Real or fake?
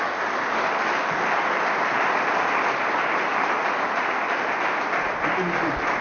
real